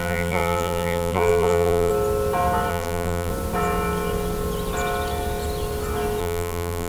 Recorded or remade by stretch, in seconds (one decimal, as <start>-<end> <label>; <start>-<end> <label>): 0.0-1.9 remade; 1.9-2.7 recorded; 2.7-3.3 remade; 3.3-6.2 recorded; 6.2-6.9 remade